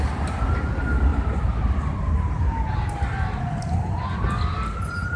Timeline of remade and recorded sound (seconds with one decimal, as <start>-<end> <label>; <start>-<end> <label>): 0.0-5.2 recorded